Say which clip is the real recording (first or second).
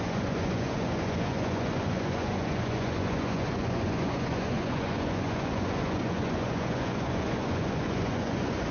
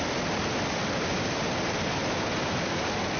second